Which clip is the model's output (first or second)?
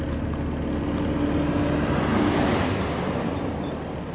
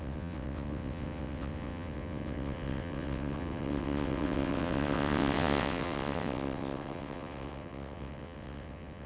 second